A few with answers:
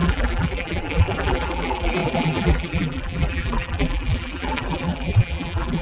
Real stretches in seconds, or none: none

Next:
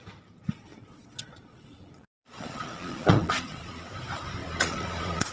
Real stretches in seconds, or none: 0.0-0.7; 3.9-4.4

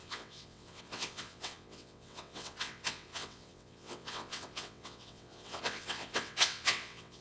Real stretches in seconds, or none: none

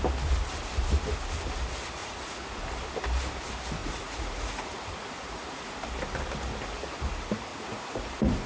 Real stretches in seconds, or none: 0.0-2.0; 2.6-3.8; 4.8-5.2; 5.8-7.5; 8.1-8.5

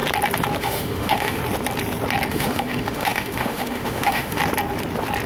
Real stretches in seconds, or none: 0.0-0.6; 1.4-2.3; 4.4-5.3

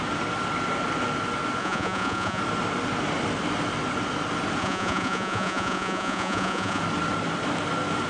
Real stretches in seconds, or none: 0.0-1.6; 2.4-4.6; 6.8-8.1